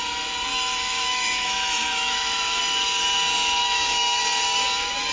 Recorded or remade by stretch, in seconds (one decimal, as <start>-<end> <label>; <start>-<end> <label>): 0.0-0.5 recorded; 0.5-2.6 remade; 2.6-3.6 recorded; 3.6-4.2 remade; 4.2-5.1 recorded